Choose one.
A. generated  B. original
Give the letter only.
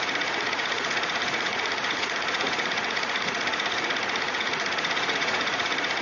A